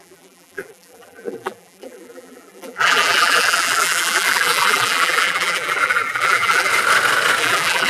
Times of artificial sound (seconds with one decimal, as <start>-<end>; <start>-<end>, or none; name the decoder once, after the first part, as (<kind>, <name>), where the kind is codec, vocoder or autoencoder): 0.0-6.7 (vocoder, BigVGAN v2); 7.4-7.9